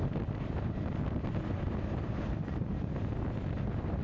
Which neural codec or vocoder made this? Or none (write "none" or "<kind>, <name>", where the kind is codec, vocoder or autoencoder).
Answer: none